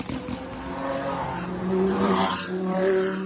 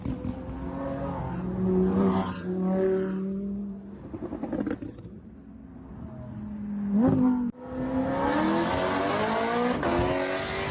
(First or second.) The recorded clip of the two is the second